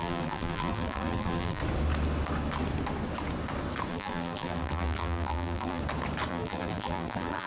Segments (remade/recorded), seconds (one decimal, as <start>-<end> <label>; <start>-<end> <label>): 0.0-1.6 remade; 1.6-3.9 recorded; 3.9-5.8 remade; 5.8-6.3 recorded; 6.3-7.5 remade